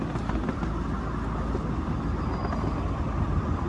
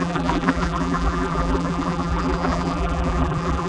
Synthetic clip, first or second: second